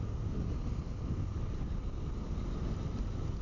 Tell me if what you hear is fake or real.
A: real